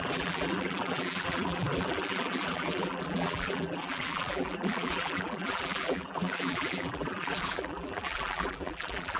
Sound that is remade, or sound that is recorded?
remade